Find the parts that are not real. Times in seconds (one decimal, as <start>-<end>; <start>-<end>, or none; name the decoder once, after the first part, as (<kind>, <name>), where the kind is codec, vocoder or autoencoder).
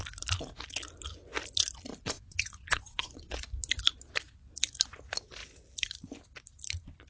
1.9-3.5 (vocoder, Vocos)